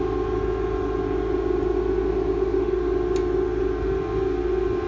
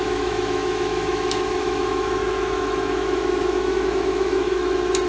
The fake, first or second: second